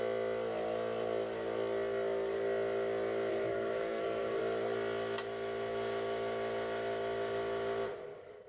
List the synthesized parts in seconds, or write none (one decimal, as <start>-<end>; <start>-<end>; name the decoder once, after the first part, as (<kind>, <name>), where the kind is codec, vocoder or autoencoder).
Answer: 3.3-4.4 (codec, SNAC)